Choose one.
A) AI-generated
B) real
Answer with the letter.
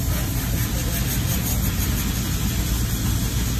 B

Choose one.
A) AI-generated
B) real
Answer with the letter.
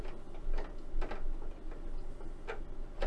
B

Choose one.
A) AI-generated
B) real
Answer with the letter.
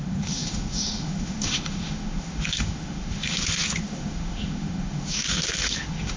A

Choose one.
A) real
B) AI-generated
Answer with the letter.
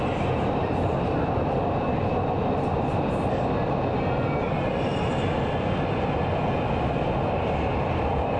A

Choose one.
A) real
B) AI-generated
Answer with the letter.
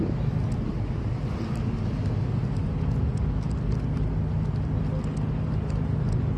A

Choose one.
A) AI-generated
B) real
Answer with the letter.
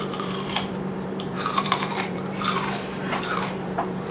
A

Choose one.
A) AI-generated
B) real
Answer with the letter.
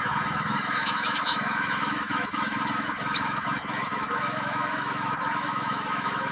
A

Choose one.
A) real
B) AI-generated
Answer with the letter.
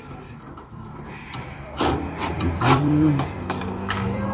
B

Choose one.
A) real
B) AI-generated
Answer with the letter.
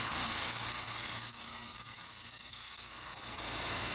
B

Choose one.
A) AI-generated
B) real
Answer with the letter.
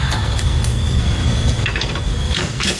A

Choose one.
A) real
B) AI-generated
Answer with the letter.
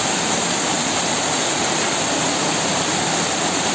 B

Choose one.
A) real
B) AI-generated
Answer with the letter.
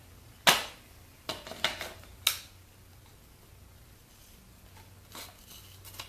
A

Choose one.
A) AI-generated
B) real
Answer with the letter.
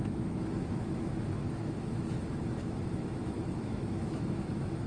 A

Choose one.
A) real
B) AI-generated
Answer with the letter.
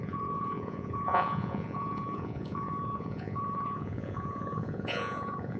B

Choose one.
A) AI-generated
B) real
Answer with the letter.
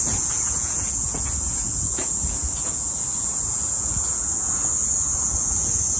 A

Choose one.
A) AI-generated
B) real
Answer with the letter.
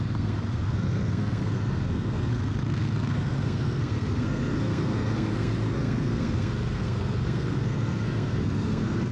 A